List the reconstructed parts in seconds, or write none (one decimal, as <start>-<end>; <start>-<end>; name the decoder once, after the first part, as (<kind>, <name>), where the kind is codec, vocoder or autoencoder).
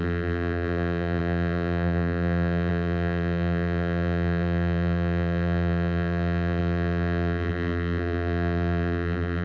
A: 0.0-9.4 (vocoder, BigVGAN v2)